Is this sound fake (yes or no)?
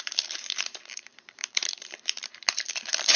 yes